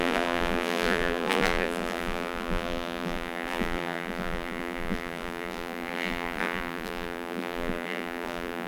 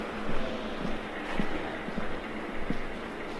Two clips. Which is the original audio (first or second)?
second